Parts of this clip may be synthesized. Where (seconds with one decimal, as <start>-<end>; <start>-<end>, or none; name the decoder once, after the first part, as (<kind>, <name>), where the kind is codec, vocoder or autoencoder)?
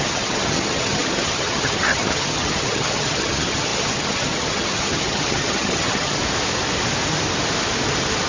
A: 0.0-6.2 (vocoder, HiFi-GAN)